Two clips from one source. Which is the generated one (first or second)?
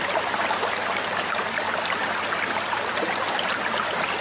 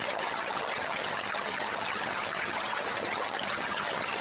second